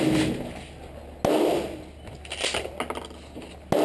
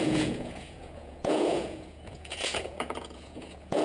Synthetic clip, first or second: second